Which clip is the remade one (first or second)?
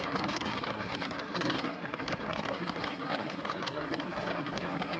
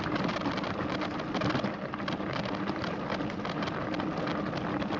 first